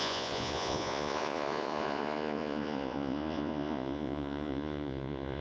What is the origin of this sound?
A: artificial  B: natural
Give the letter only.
A